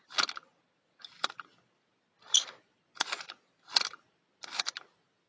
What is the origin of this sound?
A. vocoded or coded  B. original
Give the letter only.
B